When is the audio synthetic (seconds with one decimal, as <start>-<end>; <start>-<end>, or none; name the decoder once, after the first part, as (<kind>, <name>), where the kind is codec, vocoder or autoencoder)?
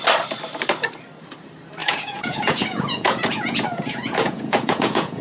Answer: 1.8-5.2 (vocoder, Vocos)